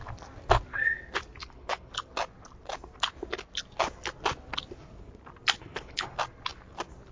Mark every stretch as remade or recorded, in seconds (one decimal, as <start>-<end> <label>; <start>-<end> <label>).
0.0-1.4 recorded; 1.4-1.9 remade; 1.9-5.6 recorded; 5.6-6.1 remade; 6.1-7.1 recorded